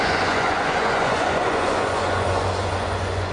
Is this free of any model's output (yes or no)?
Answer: no